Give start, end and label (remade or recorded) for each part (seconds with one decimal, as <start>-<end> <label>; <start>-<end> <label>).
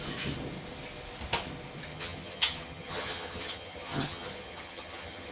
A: 0.0-1.9 recorded; 1.9-5.3 remade